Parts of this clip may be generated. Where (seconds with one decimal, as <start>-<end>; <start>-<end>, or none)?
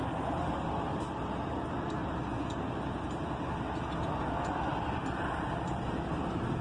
none